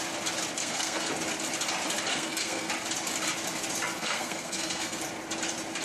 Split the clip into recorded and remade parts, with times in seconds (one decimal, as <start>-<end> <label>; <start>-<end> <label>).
0.0-0.6 recorded; 0.6-1.1 remade; 1.1-2.1 recorded; 2.1-2.7 remade; 2.7-4.0 recorded; 4.0-5.0 remade; 5.0-5.8 recorded